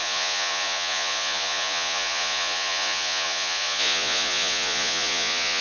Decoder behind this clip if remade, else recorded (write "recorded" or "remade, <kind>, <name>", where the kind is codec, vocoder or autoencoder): remade, vocoder, Vocos